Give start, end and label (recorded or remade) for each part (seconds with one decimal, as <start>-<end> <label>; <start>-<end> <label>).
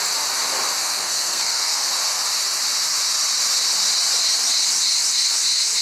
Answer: 0.0-0.8 recorded; 0.8-1.9 remade; 1.9-5.8 recorded